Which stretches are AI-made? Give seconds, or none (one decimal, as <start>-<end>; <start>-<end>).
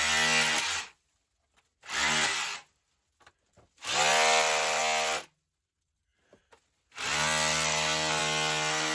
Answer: none